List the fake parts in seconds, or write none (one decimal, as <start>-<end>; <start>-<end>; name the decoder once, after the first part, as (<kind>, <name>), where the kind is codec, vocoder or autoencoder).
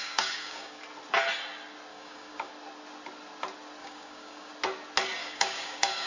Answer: 0.0-0.8 (codec, DAC); 1.9-2.5; 3.8-4.5; 5.2-6.1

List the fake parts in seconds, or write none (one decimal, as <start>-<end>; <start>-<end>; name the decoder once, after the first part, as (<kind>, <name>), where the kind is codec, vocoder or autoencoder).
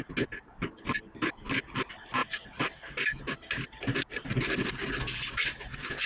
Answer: none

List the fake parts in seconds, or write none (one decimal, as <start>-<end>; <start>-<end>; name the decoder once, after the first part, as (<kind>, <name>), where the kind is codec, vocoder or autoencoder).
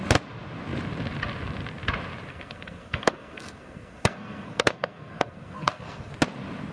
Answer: 2.3-6.1 (codec, SNAC)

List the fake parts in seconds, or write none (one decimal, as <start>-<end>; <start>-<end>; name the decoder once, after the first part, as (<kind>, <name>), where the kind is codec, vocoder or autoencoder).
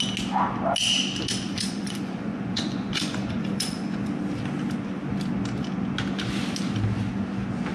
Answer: 1.5-4.1 (vocoder, Vocos)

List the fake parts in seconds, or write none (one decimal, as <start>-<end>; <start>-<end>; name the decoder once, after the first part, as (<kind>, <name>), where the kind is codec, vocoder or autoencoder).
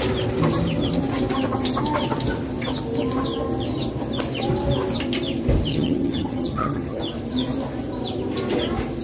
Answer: 5.7-7.0 (vocoder, HiFi-GAN)